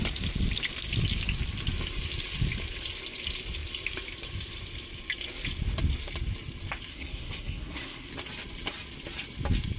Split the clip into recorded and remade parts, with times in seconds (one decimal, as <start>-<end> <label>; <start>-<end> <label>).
0.0-6.9 recorded; 6.9-8.1 remade; 8.1-9.8 recorded